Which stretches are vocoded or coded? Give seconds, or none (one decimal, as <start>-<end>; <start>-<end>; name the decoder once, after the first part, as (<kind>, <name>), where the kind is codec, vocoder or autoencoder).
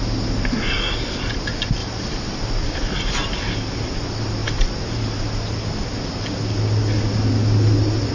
1.8-2.5 (vocoder, BigVGAN v2); 4.4-5.0